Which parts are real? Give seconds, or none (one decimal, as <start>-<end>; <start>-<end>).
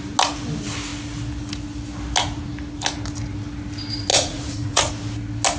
0.0-4.1; 4.9-5.6